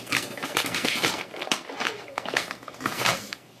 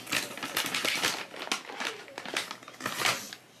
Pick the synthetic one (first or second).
first